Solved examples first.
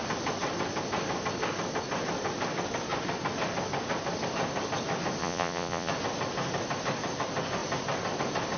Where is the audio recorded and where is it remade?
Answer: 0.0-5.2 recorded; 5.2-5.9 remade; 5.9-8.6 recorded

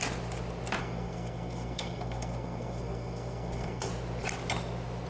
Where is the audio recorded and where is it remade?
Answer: 0.0-0.8 recorded; 0.8-3.9 remade; 3.9-5.1 recorded